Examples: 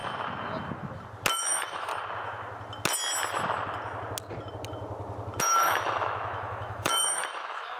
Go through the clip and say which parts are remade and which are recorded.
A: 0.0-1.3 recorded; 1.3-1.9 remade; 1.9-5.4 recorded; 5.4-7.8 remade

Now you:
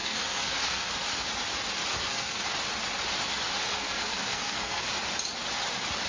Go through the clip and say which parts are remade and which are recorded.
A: 0.0-0.9 remade; 0.9-1.9 recorded; 1.9-2.4 remade; 2.4-3.7 recorded; 3.7-4.8 remade; 4.8-6.1 recorded

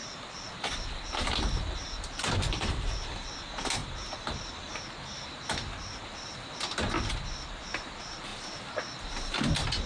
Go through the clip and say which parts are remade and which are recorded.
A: 0.0-3.3 remade; 3.3-9.9 recorded

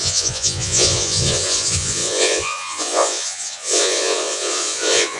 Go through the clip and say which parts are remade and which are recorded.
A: 0.0-5.2 remade

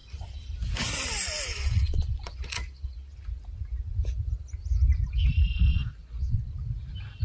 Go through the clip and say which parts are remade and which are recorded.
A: 0.0-1.5 recorded; 1.5-3.1 remade; 3.1-5.7 recorded; 5.7-6.5 remade; 6.5-7.2 recorded

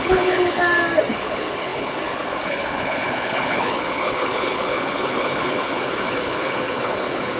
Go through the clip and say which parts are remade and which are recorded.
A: 0.0-0.6 remade; 0.6-1.1 recorded; 1.1-7.4 remade